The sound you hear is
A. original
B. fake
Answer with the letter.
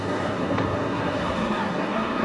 B